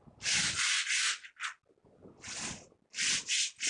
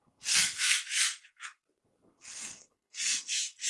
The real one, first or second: first